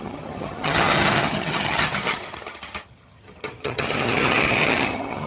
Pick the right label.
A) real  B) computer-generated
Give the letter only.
B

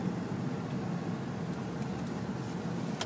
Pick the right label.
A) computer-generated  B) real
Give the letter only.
B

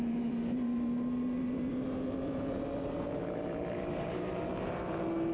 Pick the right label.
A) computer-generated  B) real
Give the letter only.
A